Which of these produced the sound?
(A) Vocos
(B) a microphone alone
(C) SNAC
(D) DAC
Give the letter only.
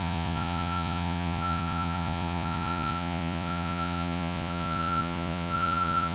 A